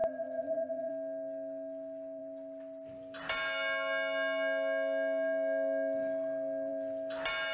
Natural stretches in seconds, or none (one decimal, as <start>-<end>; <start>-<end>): 0.9-7.5